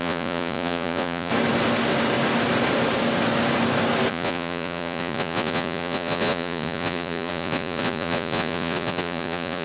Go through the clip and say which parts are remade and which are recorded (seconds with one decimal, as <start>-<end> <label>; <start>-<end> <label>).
0.0-1.3 remade; 1.3-4.1 recorded; 4.1-9.6 remade